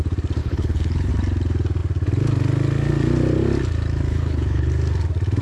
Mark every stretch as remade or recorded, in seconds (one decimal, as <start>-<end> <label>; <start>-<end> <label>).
0.0-0.4 recorded; 0.4-1.1 remade; 1.1-4.1 recorded; 4.1-4.7 remade; 4.7-5.4 recorded